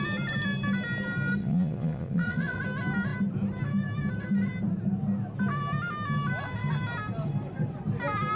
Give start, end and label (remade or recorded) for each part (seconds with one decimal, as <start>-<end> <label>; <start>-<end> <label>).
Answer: 0.0-1.4 recorded; 1.4-2.6 remade; 2.6-8.4 recorded